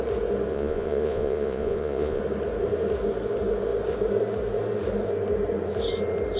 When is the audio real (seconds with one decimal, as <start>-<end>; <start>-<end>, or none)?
0.0-0.5; 2.2-6.4